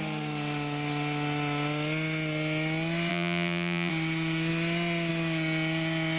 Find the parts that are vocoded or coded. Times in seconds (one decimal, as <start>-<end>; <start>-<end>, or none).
3.1-3.9